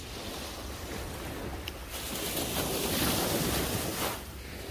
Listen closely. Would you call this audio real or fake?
real